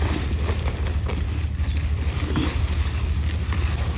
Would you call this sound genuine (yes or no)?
yes